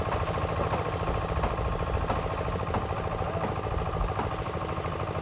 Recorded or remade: recorded